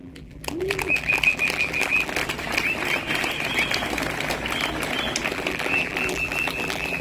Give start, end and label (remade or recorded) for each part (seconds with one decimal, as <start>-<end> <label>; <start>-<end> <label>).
0.0-2.2 remade; 2.2-5.3 recorded; 5.3-7.0 remade